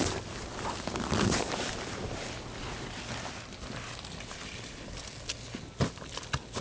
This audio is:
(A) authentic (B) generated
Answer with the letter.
A